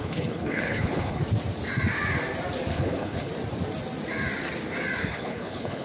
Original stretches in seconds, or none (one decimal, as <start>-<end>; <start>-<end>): 1.2-2.7; 3.3-5.1